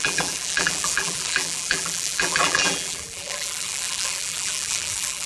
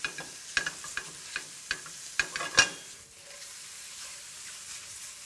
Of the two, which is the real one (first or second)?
second